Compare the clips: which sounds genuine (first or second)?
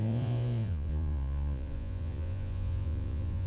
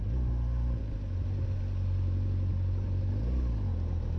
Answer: second